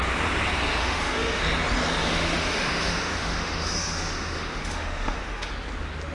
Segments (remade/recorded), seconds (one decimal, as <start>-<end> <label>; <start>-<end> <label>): 0.0-0.8 recorded; 0.8-1.4 remade; 1.4-2.0 recorded; 2.0-5.5 remade; 5.5-6.1 recorded